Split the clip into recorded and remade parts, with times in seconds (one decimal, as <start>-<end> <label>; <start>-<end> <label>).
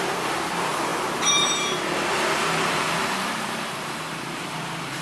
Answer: 0.0-5.0 remade